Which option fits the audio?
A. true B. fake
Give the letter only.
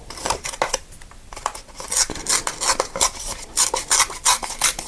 A